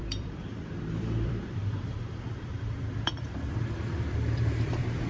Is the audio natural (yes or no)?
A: no